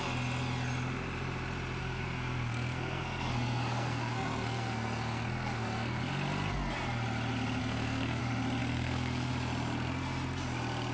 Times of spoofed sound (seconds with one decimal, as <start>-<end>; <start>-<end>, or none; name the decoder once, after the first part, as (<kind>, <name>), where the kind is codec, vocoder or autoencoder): 1.8-6.0 (codec, SNAC); 7.6-8.2; 8.6-9.3